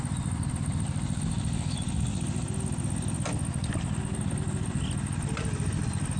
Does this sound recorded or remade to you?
recorded